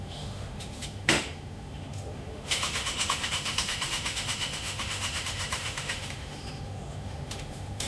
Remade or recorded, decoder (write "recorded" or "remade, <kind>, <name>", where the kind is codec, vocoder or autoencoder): remade, autoencoder, DAC-VAE